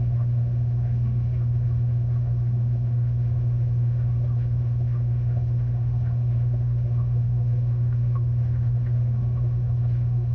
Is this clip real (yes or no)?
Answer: no